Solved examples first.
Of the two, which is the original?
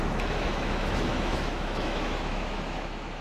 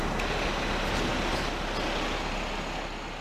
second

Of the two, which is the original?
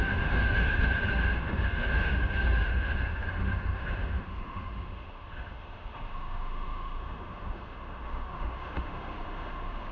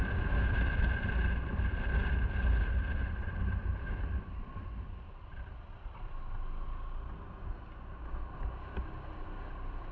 second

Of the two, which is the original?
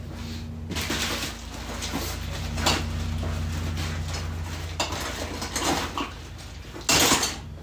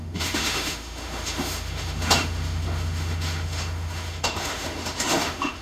first